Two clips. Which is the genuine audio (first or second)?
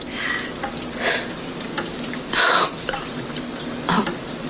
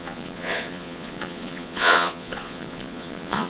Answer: first